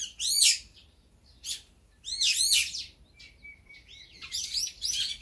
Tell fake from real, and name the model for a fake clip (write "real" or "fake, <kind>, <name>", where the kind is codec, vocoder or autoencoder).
real